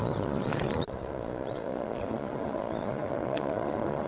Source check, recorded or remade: remade